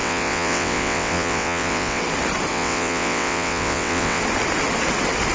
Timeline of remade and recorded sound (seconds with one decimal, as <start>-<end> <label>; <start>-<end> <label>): 0.0-2.0 remade; 2.0-2.5 recorded; 2.5-4.2 remade; 4.2-5.3 recorded